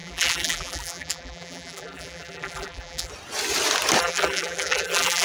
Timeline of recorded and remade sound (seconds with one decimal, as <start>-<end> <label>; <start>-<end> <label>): 0.0-3.1 remade; 3.1-4.0 recorded; 4.0-5.2 remade